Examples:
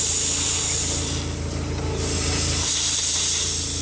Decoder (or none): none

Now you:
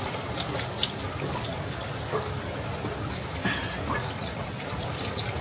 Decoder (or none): none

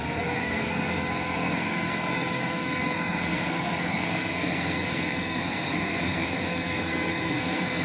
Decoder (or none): codec, SNAC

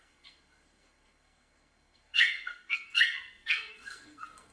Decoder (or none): codec, SNAC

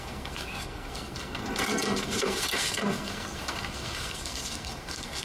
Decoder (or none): codec, SNAC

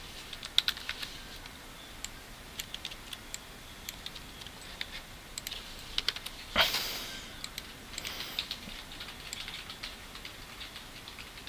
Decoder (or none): none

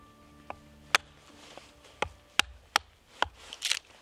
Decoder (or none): none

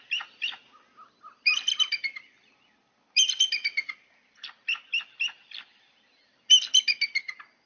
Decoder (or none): none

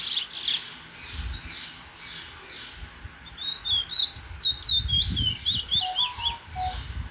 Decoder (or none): none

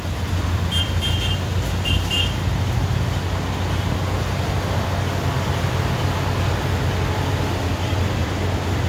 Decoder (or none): none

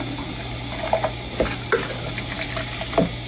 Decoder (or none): none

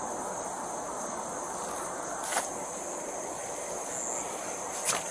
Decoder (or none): none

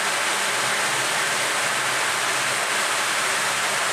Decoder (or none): none